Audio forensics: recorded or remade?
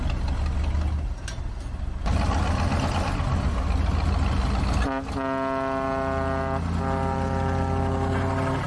recorded